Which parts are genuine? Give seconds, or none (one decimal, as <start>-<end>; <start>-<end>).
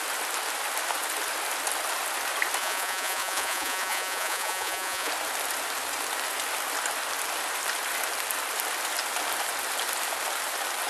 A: 0.0-2.6; 5.1-10.9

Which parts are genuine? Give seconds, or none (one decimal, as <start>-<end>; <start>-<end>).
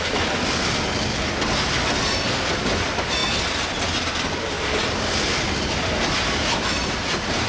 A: 0.0-7.5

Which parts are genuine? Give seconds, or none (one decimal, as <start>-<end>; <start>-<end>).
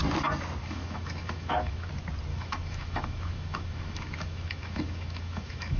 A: 0.0-0.6; 1.9-2.3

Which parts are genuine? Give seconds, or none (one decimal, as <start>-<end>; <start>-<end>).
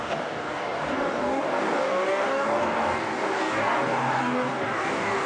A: none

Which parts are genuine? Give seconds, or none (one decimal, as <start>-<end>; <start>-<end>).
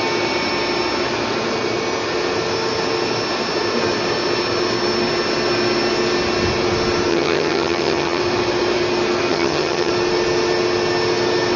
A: 0.0-7.1; 8.2-9.3; 9.9-11.6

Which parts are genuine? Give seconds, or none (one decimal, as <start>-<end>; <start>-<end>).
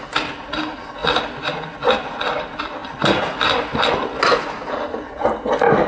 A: 0.0-5.9